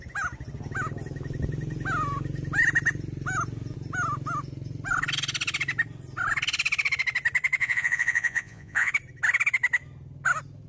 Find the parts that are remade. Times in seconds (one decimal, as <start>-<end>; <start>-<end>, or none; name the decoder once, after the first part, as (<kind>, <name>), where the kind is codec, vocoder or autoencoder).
7.6-8.9 (vocoder, Vocos)